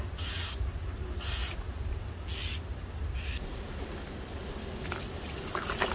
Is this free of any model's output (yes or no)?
yes